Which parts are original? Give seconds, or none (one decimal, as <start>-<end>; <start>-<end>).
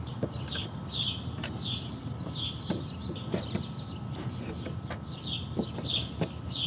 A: 0.0-2.0; 2.7-6.7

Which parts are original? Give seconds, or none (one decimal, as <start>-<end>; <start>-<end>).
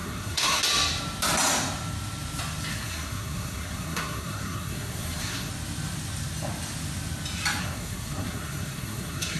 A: 0.6-2.7; 5.5-7.6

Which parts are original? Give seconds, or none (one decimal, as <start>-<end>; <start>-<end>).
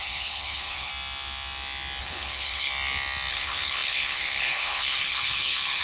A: 0.9-2.0; 2.7-3.3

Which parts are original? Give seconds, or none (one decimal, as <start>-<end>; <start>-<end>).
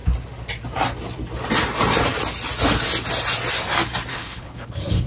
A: 0.0-4.1